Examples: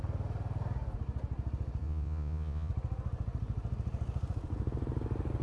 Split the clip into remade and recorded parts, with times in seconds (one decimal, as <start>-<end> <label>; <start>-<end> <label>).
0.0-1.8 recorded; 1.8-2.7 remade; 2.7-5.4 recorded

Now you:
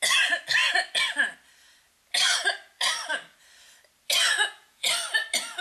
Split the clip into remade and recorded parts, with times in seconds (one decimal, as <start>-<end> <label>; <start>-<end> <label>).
0.0-4.4 recorded; 4.4-4.9 remade; 4.9-5.6 recorded

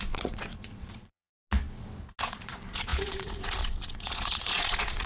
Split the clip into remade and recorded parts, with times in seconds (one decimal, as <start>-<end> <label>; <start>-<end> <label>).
0.0-1.3 remade; 1.3-2.2 recorded; 2.2-5.1 remade

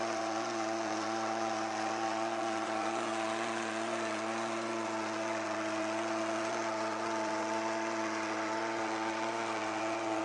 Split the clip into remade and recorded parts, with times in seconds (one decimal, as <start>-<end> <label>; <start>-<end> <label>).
0.0-10.2 remade